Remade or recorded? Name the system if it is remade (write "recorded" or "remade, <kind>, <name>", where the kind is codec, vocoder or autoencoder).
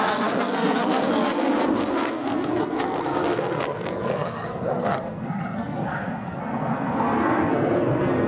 remade, codec, SNAC